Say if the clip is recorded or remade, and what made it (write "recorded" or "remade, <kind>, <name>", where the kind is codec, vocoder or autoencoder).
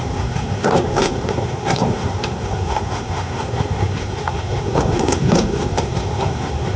remade, codec, SNAC